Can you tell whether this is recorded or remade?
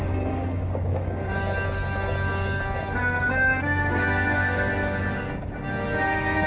remade